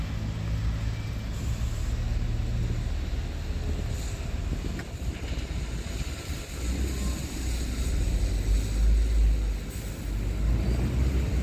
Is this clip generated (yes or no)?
no